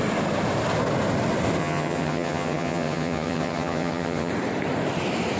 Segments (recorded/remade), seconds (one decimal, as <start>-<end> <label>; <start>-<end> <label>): 0.0-1.6 recorded; 1.6-4.3 remade; 4.3-5.4 recorded